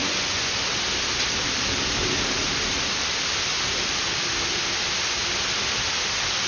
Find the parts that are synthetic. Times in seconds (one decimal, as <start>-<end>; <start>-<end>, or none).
0.0-0.7